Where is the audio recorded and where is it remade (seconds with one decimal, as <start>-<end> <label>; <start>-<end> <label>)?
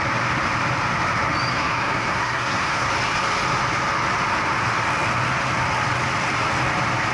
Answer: 0.0-1.5 recorded; 1.5-2.9 remade; 2.9-7.1 recorded